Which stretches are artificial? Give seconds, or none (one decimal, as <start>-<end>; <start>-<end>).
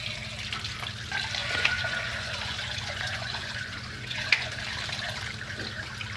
1.4-4.5